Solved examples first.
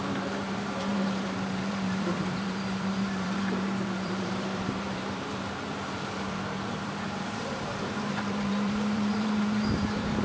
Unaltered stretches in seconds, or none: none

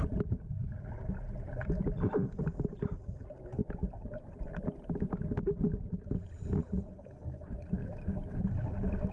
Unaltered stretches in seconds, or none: 0.0-7.8; 8.4-9.1

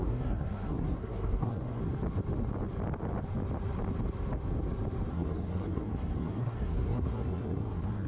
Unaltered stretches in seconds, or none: 1.8-5.1

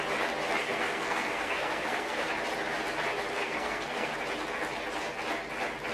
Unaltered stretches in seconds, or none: 0.0-0.6; 2.3-3.3; 4.2-5.9

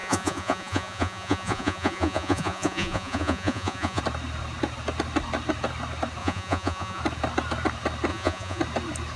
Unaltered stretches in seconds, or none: 4.0-6.2; 7.0-8.1; 8.6-9.2

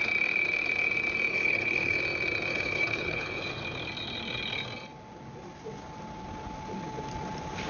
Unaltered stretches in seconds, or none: 0.0-1.3; 2.0-2.5; 3.4-7.7

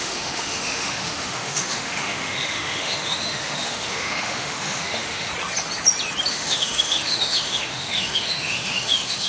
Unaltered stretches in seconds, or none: 5.3-6.3

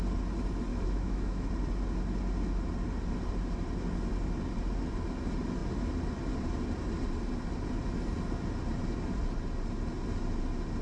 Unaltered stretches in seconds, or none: 0.0-0.7; 1.5-10.8